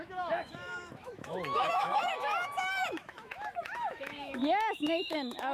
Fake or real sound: fake